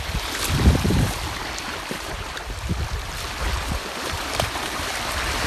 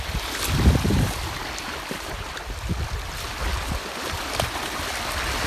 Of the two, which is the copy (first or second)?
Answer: first